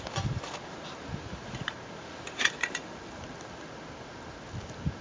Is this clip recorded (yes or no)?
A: yes